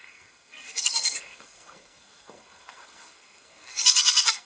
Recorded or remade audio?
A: remade